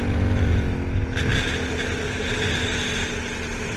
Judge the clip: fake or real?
real